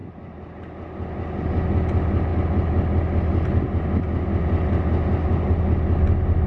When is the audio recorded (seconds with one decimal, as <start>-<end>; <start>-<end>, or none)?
0.0-6.5